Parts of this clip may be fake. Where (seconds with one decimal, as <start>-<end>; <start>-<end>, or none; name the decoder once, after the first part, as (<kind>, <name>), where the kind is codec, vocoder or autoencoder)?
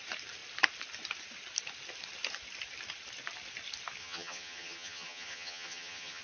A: 4.0-6.2 (vocoder, HiFi-GAN)